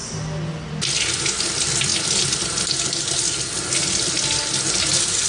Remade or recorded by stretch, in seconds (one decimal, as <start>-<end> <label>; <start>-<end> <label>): 0.0-5.3 recorded

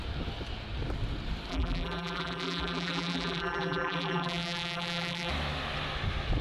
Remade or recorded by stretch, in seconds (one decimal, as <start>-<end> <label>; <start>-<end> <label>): 0.0-1.5 recorded; 1.5-5.3 remade; 5.3-6.4 recorded

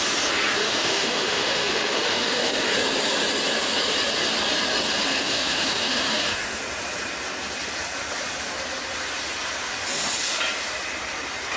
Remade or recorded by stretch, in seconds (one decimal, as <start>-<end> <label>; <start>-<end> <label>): 0.0-0.6 recorded; 0.6-2.7 remade; 2.7-5.1 recorded; 5.1-6.6 remade; 6.6-11.6 recorded

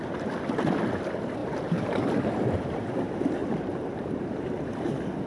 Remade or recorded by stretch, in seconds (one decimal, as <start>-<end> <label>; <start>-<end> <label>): 0.0-1.4 recorded; 1.4-2.9 remade; 2.9-3.4 recorded; 3.4-4.5 remade; 4.5-5.3 recorded

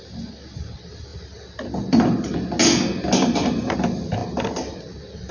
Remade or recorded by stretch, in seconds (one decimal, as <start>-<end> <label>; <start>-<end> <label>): 0.0-5.3 recorded

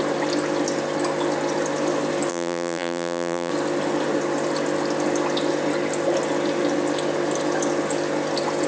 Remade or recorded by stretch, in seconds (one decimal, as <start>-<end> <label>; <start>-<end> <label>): 0.0-2.3 recorded; 2.3-3.5 remade; 3.5-8.7 recorded

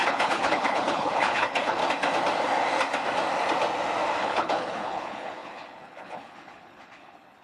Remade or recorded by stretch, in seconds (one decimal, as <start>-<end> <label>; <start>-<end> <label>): 0.0-1.8 remade; 1.8-4.2 recorded; 4.2-7.4 remade